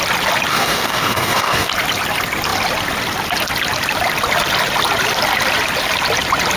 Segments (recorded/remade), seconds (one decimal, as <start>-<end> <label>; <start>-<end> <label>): 0.0-0.5 recorded; 0.5-1.7 remade; 1.7-6.6 recorded